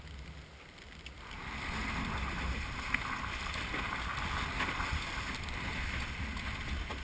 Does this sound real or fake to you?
real